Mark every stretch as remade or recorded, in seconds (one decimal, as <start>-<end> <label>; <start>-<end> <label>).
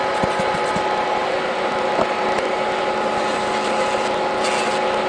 0.0-5.1 recorded